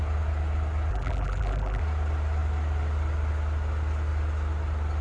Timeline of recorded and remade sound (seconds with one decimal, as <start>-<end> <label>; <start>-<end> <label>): 0.0-0.9 recorded; 0.9-1.8 remade; 1.8-5.0 recorded